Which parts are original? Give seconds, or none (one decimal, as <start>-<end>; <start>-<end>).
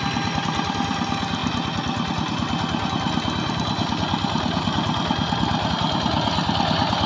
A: 0.0-7.1